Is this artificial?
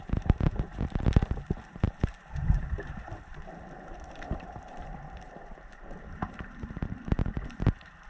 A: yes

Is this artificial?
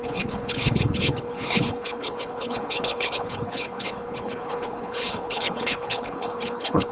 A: yes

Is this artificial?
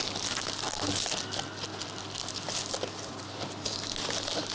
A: no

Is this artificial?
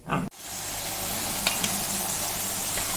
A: no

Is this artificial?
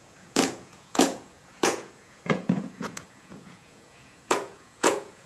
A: yes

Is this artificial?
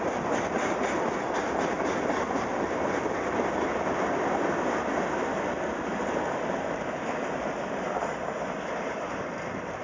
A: no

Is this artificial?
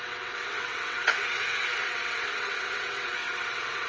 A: yes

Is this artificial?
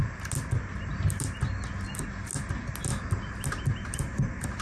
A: no